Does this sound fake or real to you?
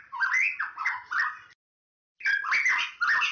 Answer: real